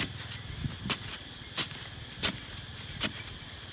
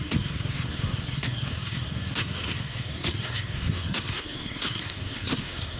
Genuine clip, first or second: first